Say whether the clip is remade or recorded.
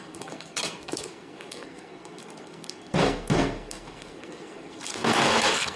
remade